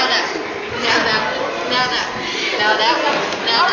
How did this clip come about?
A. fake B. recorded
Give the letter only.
B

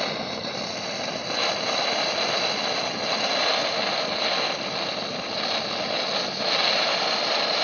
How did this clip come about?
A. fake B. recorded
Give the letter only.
B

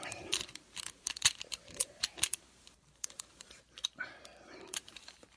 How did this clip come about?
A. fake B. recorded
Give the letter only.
A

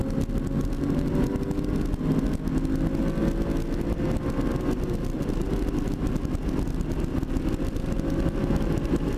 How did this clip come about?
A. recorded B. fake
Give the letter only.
A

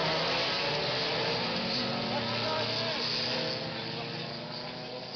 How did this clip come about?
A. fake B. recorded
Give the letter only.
B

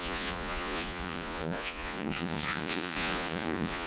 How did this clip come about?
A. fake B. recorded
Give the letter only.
A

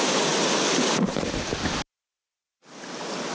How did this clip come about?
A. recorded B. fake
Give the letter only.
A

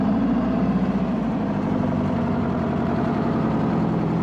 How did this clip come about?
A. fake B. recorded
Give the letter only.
A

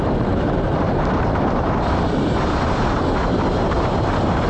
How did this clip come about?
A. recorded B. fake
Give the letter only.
B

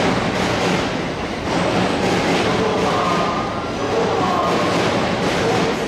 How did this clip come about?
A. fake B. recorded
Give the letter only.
B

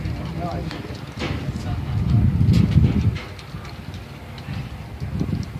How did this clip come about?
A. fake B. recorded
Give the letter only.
B